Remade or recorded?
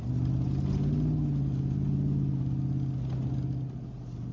recorded